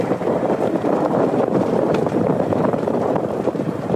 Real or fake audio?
fake